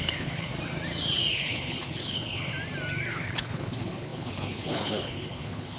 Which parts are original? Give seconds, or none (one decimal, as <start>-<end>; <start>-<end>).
0.5-1.3; 2.5-3.1